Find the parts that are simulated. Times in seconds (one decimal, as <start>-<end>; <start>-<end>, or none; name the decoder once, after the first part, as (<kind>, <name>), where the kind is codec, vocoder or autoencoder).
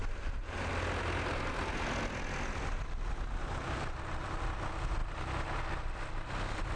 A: 0.0-0.7 (vocoder, BigVGAN v2); 3.4-4.0